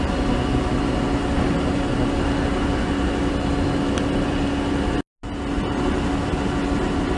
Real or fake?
real